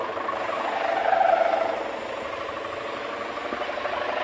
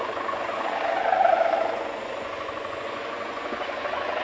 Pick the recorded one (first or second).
first